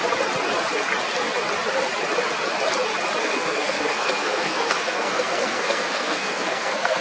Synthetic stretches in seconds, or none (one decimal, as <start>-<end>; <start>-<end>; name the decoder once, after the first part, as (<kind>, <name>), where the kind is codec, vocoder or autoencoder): 3.2-7.0 (codec, SNAC)